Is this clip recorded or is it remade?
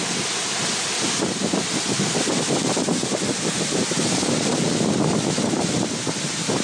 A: recorded